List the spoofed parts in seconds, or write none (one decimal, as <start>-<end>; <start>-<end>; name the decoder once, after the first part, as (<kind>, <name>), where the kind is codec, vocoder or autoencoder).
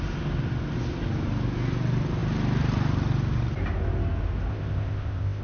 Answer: 4.5-5.4 (codec, ZipCodec)